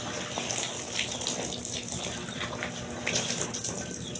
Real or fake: real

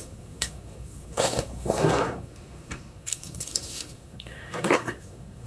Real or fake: fake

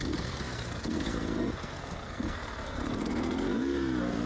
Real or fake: fake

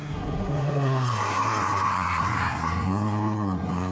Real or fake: fake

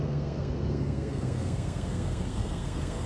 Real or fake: fake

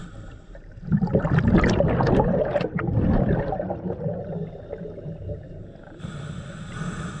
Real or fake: real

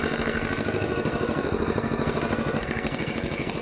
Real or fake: fake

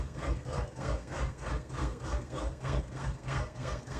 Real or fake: fake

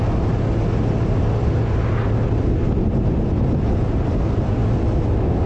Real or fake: real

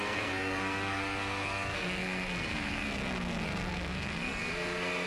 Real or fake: fake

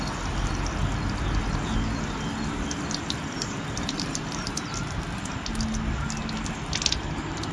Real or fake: real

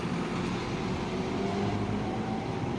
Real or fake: real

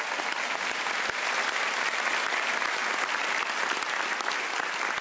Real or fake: real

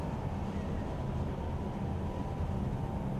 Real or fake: real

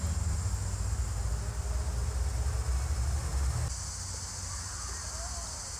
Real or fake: real